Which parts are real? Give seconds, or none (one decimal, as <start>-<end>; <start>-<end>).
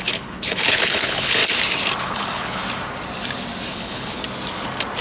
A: 1.4-2.0; 2.6-3.7; 4.2-5.0